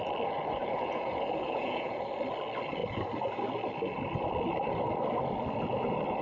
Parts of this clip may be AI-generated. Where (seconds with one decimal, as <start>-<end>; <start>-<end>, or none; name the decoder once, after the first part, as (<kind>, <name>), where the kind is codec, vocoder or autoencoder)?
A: 0.6-2.1 (vocoder, Vocos)